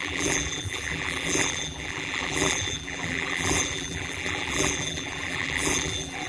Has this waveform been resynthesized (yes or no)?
yes